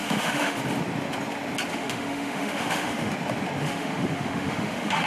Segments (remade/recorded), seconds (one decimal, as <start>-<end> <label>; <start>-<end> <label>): 0.0-0.6 remade; 0.6-1.7 recorded; 1.7-3.1 remade; 3.1-3.6 recorded; 3.6-5.1 remade